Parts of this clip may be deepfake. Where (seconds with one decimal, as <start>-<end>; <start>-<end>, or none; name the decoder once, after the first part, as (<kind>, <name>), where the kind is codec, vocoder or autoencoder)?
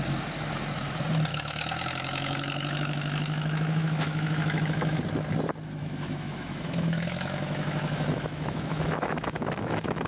1.3-5.0 (autoencoder, DAC-VAE); 5.8-10.1